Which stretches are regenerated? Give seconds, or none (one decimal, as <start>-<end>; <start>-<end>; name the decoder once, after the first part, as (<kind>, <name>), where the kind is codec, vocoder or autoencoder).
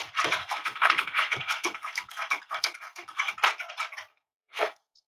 0.4-3.3 (codec, SNAC); 4.1-5.1